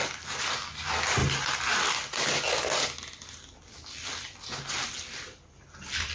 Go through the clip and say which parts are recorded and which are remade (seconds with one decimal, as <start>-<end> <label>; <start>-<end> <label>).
0.0-6.1 recorded